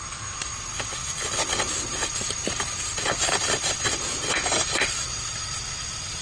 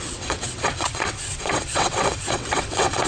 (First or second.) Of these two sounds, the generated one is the second